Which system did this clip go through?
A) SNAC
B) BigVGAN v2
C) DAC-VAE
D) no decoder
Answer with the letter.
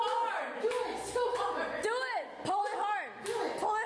D